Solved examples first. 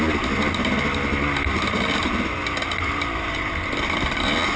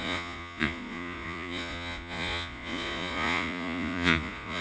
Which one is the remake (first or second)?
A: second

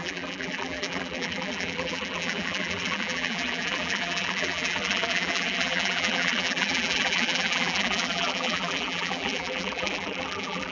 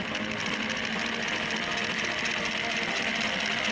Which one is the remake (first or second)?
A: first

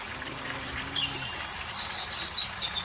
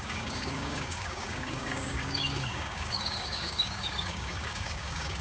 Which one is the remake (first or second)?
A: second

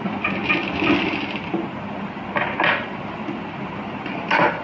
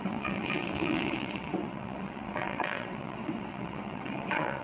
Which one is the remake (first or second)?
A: second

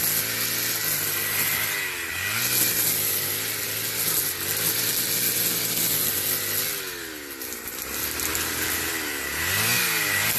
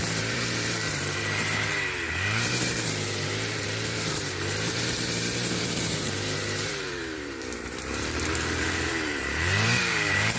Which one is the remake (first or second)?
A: second